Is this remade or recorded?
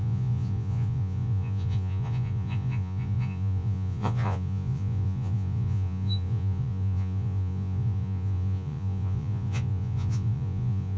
remade